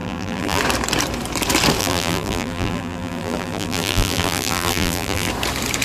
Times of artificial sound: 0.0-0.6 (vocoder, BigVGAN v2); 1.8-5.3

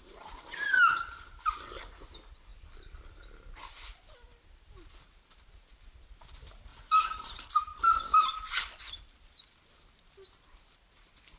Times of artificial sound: 6.7-7.3 (vocoder, BigVGAN v2); 7.7-8.8

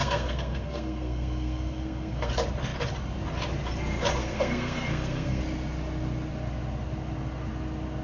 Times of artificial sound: 0.0-2.3 (codec, SNAC); 4.2-5.4

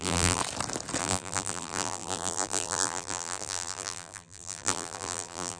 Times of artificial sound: 0.0-0.4 (vocoder, BigVGAN v2); 1.0-5.6

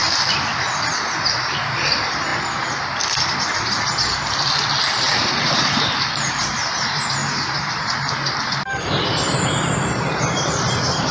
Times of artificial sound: 1.2-2.3 (vocoder, BigVGAN v2); 5.3-11.1

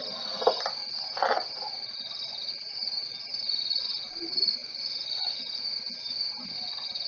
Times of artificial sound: 4.6-5.4 (vocoder, Vocos)

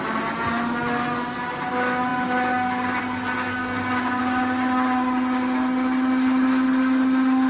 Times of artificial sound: 3.6-4.2 (codec, DAC)

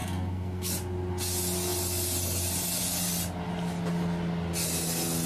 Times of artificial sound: 0.0-0.7 (codec, SNAC)